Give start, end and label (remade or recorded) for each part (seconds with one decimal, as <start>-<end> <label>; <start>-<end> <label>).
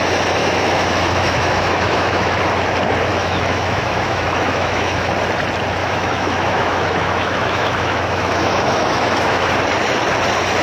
0.0-0.4 recorded; 0.4-2.4 remade; 2.4-3.1 recorded; 3.1-5.1 remade; 5.1-5.8 recorded; 5.8-9.5 remade; 9.5-10.6 recorded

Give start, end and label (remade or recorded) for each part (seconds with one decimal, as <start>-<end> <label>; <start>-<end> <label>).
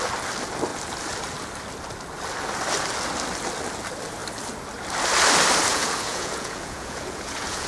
0.0-5.7 recorded; 5.7-7.7 remade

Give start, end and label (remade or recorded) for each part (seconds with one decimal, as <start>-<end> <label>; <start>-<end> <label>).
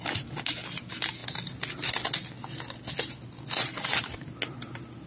0.0-5.1 recorded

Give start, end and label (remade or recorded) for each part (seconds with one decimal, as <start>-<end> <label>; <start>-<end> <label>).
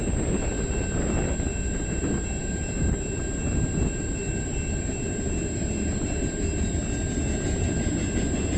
0.0-8.6 recorded